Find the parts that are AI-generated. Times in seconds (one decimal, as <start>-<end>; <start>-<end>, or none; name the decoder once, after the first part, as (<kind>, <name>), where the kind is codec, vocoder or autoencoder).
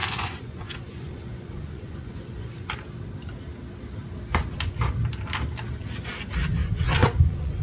0.0-2.7 (vocoder, Vocos); 6.6-7.6